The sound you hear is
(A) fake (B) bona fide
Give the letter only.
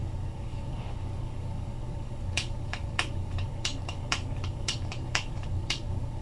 A